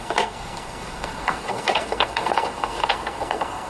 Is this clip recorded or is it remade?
remade